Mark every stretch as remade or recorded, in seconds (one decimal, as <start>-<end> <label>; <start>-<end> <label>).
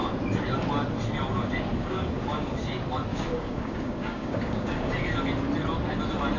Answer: 0.0-1.7 recorded; 1.7-2.6 remade; 2.6-3.1 recorded; 3.1-4.9 remade; 4.9-6.4 recorded